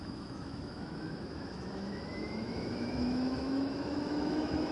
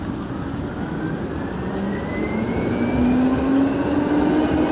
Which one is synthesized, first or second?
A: first